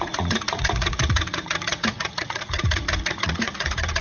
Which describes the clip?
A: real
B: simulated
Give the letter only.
B